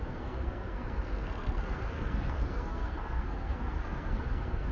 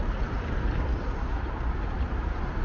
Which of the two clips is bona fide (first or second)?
second